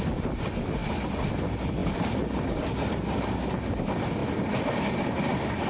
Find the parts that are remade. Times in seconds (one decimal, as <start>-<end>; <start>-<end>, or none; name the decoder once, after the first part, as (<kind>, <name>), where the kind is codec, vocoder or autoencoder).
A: none